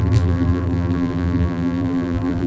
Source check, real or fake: fake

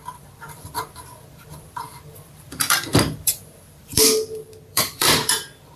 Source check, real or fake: fake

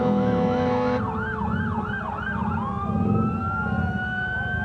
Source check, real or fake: real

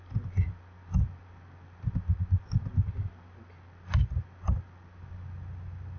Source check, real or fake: real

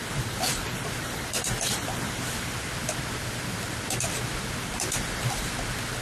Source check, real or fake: fake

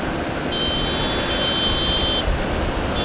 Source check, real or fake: real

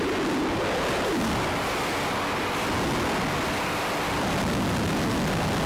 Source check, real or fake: real